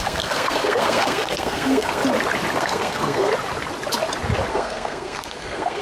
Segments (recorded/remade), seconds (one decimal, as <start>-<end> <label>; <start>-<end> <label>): 0.0-2.0 remade; 2.0-2.5 recorded; 2.5-3.3 remade; 3.3-4.5 recorded; 4.5-5.8 remade